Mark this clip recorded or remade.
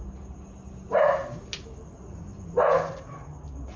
recorded